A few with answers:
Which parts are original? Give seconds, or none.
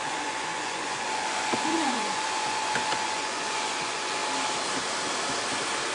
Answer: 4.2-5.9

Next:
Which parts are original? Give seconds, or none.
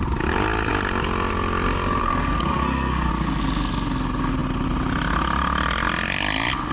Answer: 0.0-2.0; 3.1-6.7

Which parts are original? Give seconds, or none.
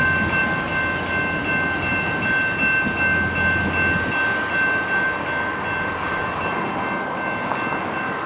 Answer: 0.0-8.3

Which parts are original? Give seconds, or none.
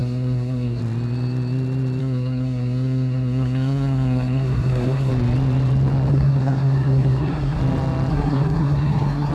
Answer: 0.8-2.0; 5.1-6.1; 7.6-8.1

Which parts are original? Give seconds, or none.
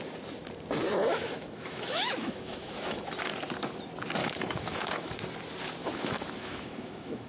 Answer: 0.0-1.1; 3.1-4.2; 5.1-5.8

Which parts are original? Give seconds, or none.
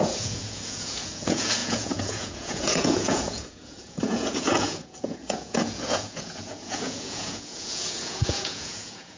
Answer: none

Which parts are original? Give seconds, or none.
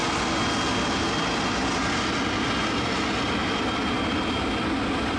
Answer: 0.0-5.2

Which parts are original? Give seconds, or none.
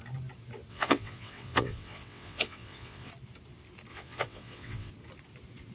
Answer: 0.0-0.7; 3.1-3.9; 4.9-5.7